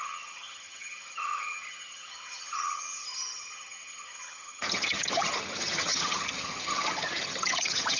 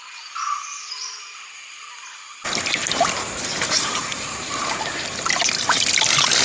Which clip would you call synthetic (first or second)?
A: first